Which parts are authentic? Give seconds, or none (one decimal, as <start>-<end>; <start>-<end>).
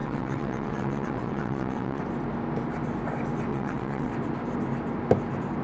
2.0-3.5; 4.1-5.6